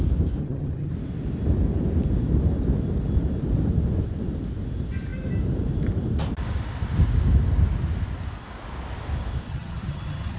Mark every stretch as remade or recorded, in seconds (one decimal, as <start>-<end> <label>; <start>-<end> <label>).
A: 0.0-0.4 recorded; 0.4-0.9 remade; 0.9-9.5 recorded; 9.5-10.4 remade